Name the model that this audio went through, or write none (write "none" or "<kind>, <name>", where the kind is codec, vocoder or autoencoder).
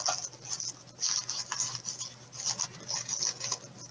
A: none